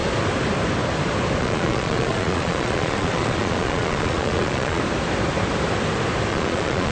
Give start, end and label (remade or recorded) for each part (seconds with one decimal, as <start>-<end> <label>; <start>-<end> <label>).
0.0-1.4 recorded; 1.4-4.8 remade; 4.8-6.3 recorded; 6.3-6.9 remade

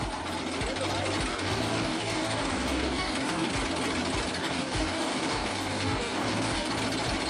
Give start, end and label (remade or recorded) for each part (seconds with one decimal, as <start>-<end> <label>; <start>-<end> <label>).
0.0-1.3 recorded; 1.3-3.5 remade; 3.5-4.4 recorded; 4.4-6.7 remade; 6.7-7.3 recorded